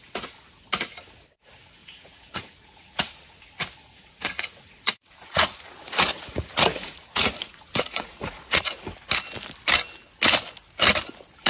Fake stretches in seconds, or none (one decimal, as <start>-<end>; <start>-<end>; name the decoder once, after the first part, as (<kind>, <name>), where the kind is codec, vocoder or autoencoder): 1.8-3.4 (vocoder, Vocos); 3.8-8.8